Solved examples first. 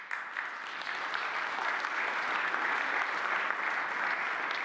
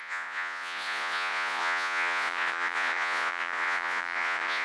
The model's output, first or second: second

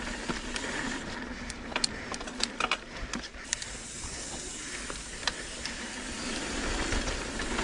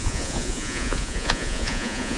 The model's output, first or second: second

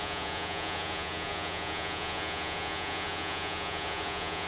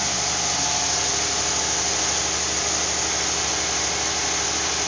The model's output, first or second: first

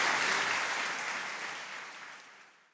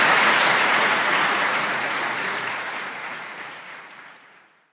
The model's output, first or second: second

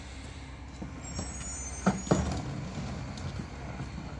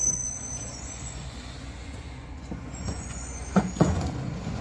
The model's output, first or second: second